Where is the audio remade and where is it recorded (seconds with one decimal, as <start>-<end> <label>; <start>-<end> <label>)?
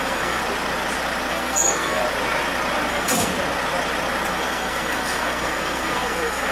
0.0-0.4 remade; 0.4-1.3 recorded; 1.3-2.0 remade; 2.0-2.9 recorded; 2.9-3.3 remade; 3.3-4.3 recorded; 4.3-6.5 remade